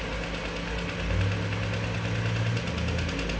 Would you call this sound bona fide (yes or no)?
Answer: yes